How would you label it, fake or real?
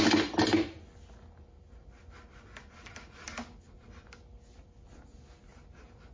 real